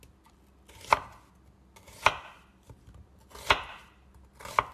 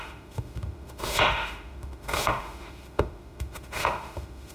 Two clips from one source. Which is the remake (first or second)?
second